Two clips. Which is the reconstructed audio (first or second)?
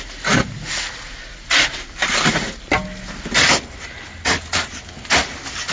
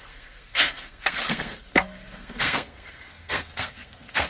second